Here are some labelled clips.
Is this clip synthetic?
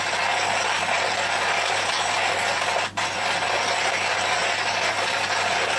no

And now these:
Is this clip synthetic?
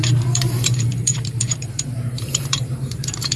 yes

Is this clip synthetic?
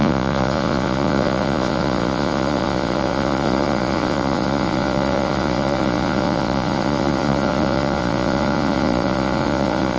yes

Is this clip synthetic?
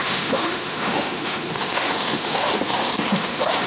yes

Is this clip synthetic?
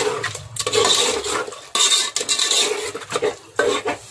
no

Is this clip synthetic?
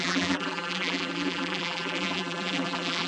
yes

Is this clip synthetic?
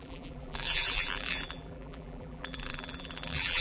yes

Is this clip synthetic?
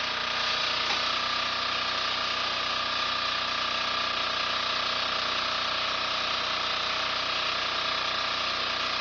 no